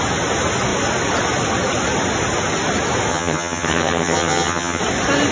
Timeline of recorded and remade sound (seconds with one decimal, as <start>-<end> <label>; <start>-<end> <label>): 0.0-3.1 recorded; 3.1-4.8 remade; 4.8-5.3 recorded